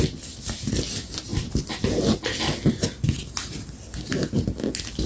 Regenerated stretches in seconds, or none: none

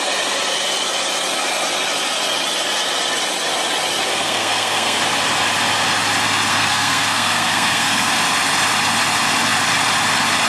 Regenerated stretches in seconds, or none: 4.1-5.0; 6.5-8.1

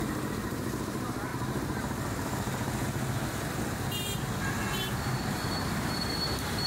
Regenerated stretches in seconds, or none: 0.0-1.3; 5.3-6.7

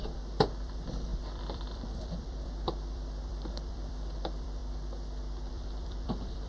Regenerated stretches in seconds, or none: 0.0-4.6; 5.5-6.5

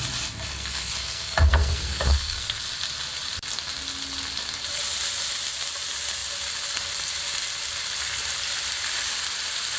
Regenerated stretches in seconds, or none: 0.5-2.6